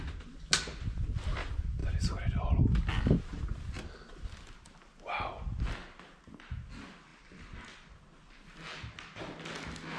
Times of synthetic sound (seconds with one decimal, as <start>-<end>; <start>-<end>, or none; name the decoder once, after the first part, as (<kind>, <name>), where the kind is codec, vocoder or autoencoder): 7.1-8.5 (vocoder, BigVGAN v2)